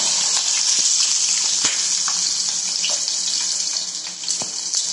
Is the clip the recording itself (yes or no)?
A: yes